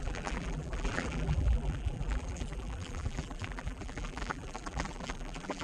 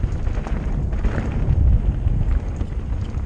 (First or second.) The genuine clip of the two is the second